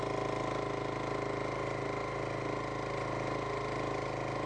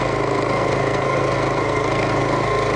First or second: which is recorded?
first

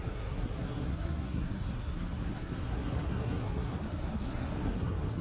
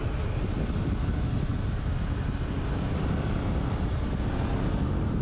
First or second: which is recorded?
second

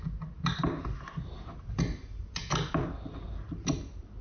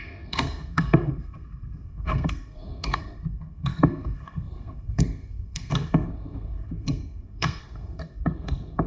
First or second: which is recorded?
first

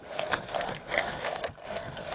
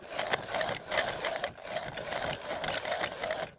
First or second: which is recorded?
second